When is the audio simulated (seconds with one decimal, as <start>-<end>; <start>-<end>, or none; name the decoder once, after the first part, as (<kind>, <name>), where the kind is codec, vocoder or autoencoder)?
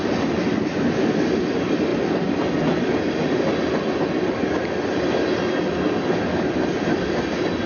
none